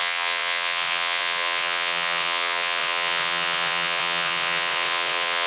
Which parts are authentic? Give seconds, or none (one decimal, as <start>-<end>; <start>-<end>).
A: none